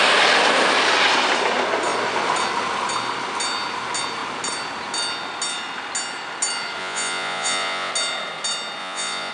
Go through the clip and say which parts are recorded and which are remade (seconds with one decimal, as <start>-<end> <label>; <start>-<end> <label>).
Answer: 0.0-6.8 recorded; 6.8-7.9 remade; 7.9-8.8 recorded; 8.8-9.3 remade